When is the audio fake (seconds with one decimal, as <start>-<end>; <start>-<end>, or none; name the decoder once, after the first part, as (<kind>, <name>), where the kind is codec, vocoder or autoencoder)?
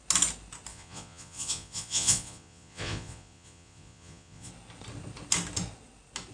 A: 0.7-4.5 (vocoder, Vocos)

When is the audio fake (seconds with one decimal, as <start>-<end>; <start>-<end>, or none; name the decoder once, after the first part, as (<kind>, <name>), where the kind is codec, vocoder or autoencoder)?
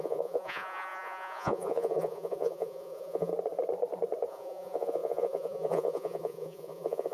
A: 0.0-3.3 (vocoder, Vocos); 4.3-7.1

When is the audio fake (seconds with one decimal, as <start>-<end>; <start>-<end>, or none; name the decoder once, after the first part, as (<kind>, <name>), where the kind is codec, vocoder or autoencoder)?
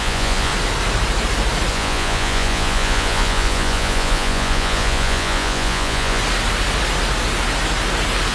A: 0.0-0.5 (vocoder, Vocos); 1.7-6.2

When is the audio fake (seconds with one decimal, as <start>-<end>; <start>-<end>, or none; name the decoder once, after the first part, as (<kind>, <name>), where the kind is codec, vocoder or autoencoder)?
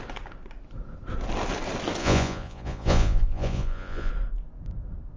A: 2.0-4.1 (vocoder, Vocos)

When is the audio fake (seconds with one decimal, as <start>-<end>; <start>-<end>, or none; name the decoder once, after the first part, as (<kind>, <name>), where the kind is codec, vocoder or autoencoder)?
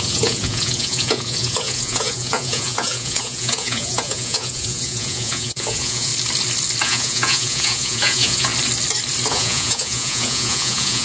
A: 0.0-6.1 (vocoder, Vocos); 6.8-8.5; 9.3-11.0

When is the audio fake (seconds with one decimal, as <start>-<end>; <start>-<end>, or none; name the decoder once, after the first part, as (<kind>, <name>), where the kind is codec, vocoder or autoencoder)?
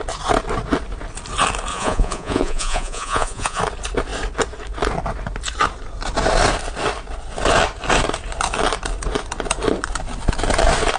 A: 1.7-3.6 (vocoder, Vocos)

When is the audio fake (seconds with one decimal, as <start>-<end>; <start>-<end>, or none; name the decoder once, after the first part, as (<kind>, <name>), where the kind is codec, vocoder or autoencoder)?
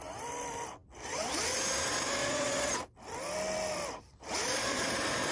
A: 2.2-2.8 (vocoder, Vocos)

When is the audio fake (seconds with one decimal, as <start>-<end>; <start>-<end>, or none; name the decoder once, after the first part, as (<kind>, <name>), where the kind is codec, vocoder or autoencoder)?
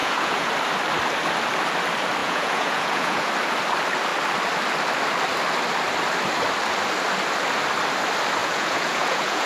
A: 0.0-0.5 (vocoder, Vocos); 2.2-3.3; 8.4-9.5